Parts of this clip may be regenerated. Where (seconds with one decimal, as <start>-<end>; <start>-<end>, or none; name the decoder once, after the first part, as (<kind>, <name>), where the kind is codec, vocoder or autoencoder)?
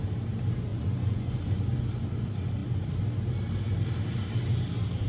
0.7-1.6 (vocoder, Vocos)